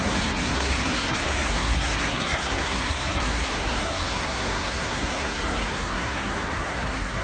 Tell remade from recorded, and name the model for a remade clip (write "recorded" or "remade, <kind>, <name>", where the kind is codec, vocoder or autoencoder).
remade, codec, SNAC